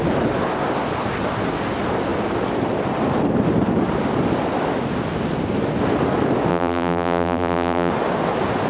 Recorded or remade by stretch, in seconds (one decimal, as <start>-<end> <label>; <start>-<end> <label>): 0.0-6.5 recorded; 6.5-7.9 remade; 7.9-8.7 recorded